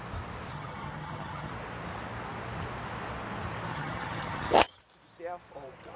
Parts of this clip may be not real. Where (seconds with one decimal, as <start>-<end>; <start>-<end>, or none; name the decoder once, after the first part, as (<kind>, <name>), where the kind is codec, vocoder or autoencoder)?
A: 0.5-1.5 (vocoder, HiFi-GAN); 3.7-4.8